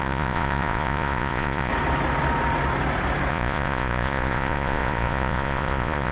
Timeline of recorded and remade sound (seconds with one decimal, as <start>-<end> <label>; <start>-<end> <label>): 0.0-1.7 remade; 1.7-3.3 recorded; 3.3-6.1 remade